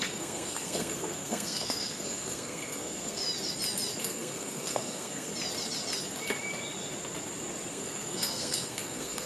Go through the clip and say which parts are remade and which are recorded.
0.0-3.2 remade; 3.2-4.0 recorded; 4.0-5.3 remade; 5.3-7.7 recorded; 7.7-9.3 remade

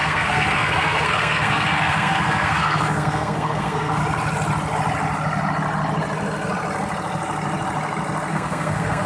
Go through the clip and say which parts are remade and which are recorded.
0.0-4.0 remade; 4.0-8.3 recorded; 8.3-9.1 remade

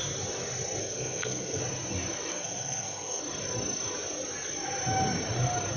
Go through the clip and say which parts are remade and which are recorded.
0.0-0.8 recorded; 0.8-1.6 remade; 1.6-2.3 recorded; 2.3-3.2 remade; 3.2-5.8 recorded

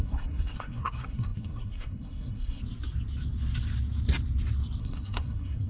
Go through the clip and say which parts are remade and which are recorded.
0.0-2.6 remade; 2.6-4.8 recorded; 4.8-5.7 remade

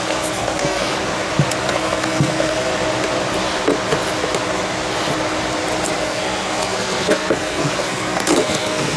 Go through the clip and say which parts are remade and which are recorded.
0.0-0.9 remade; 0.9-1.6 recorded; 1.6-2.7 remade; 2.7-6.0 recorded; 6.0-9.0 remade

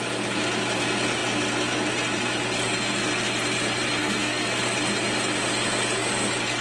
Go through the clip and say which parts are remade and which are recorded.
0.0-4.0 recorded; 4.0-4.6 remade; 4.6-6.6 recorded

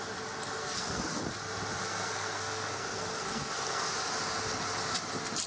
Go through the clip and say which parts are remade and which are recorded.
0.0-0.6 recorded; 0.6-1.2 remade; 1.2-1.8 recorded; 1.8-3.9 remade; 3.9-5.5 recorded

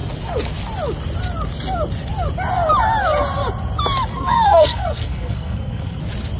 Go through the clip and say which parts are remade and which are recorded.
0.0-4.1 recorded; 4.1-6.0 remade; 6.0-6.4 recorded